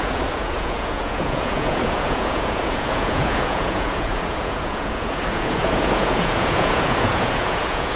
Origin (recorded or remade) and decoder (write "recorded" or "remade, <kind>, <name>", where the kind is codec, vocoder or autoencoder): remade, vocoder, Vocos